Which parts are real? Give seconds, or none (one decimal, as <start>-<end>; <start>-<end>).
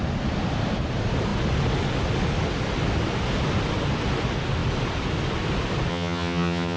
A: 0.0-5.9